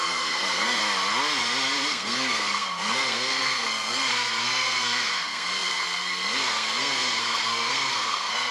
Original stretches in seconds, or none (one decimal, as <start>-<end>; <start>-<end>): 0.8-1.9